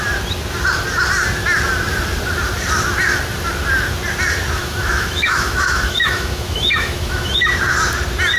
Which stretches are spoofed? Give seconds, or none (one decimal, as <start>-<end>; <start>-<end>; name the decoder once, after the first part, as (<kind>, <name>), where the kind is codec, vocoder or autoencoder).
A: 4.6-7.6 (autoencoder, DAC-VAE)